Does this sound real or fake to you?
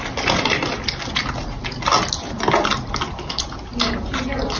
real